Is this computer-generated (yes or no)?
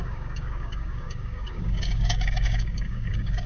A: yes